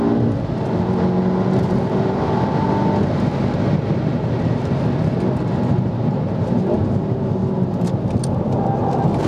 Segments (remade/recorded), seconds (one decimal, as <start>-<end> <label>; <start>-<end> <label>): 0.0-9.3 recorded